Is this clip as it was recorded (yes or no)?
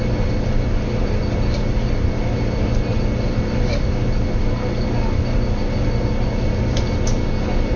yes